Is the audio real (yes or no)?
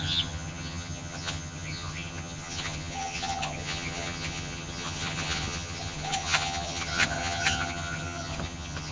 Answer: no